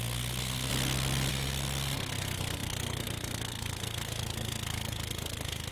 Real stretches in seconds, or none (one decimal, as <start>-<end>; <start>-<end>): 0.7-1.3